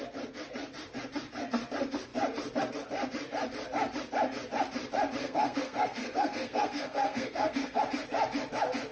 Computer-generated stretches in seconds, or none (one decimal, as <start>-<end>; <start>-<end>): 5.2-7.8